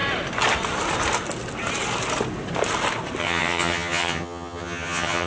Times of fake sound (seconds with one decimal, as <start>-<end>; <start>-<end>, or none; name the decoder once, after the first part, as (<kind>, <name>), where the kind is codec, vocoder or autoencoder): 3.2-5.3 (vocoder, HiFi-GAN)